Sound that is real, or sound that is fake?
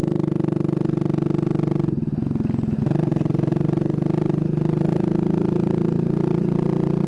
real